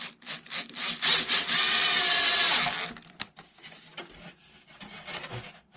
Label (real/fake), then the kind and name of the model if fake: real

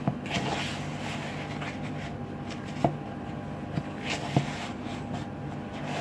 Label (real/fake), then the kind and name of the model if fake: real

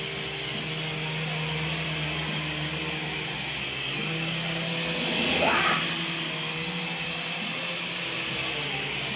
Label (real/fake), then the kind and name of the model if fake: real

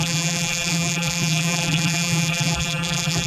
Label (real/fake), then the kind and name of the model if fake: fake, vocoder, BigVGAN v2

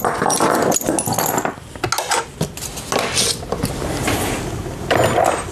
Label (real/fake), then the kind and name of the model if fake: real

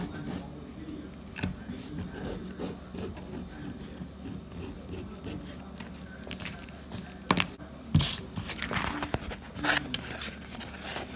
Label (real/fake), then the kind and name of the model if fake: real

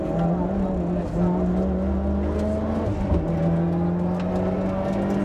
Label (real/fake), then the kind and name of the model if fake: real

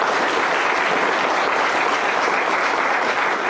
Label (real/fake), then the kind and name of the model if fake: real